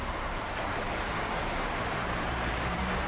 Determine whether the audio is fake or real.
fake